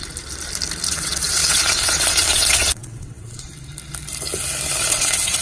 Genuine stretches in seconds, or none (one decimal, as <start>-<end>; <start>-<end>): 0.0-0.9; 3.5-4.8